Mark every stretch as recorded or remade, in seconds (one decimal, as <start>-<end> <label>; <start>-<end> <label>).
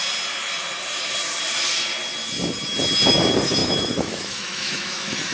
0.0-3.1 recorded; 3.1-5.3 remade